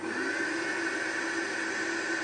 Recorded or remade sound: recorded